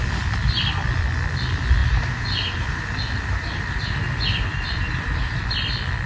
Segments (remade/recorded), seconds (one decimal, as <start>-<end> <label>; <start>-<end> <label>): 0.0-1.8 recorded; 1.8-5.5 remade; 5.5-6.1 recorded

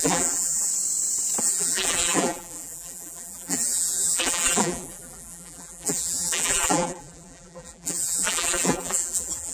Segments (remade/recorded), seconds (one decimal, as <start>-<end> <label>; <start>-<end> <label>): 0.0-0.7 remade; 0.7-1.4 recorded; 1.4-9.5 remade